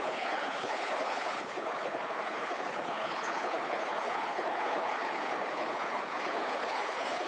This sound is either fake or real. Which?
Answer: fake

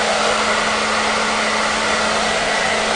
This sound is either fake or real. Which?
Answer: real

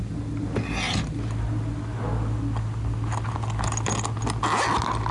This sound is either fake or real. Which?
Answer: real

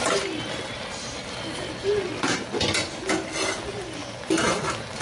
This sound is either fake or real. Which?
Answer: real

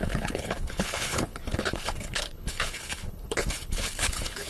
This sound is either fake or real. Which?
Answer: fake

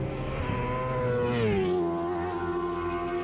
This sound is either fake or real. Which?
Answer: real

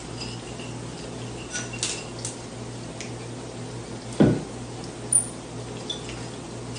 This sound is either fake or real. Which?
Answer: real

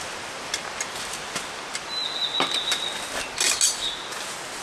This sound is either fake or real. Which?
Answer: real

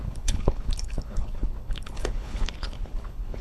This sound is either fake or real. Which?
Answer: fake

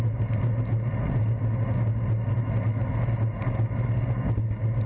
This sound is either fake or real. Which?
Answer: real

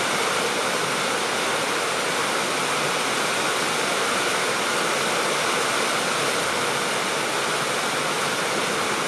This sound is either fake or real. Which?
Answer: real